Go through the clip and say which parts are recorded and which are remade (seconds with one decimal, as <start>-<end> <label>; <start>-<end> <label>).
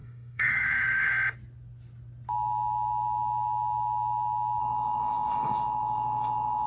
0.0-1.1 remade; 1.1-4.6 recorded; 4.6-6.7 remade